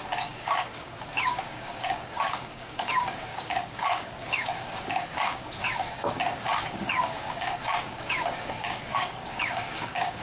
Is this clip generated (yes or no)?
yes